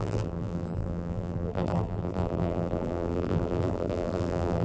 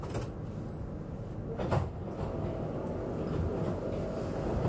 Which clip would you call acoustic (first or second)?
second